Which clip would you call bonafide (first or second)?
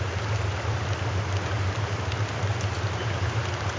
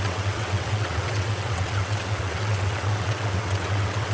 first